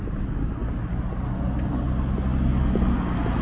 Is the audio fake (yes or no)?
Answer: no